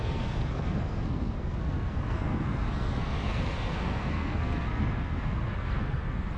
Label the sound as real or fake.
fake